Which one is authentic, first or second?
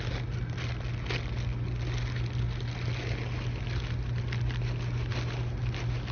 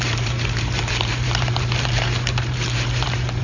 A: first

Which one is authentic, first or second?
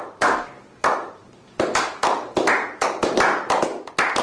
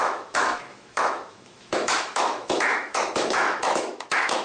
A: first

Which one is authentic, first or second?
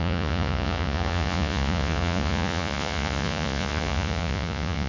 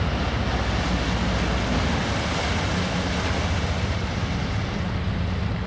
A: second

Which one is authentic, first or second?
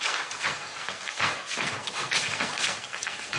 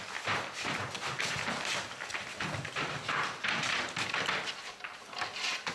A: second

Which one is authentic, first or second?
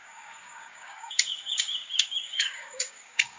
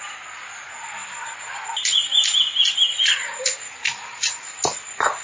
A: second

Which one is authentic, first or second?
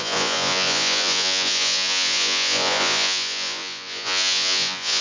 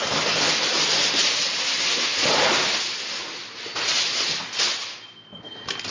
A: second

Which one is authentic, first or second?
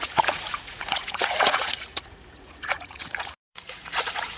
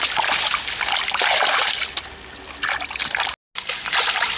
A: second